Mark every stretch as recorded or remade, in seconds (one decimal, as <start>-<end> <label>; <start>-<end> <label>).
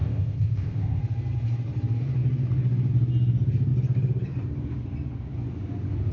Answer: 0.0-1.0 remade; 1.0-6.1 recorded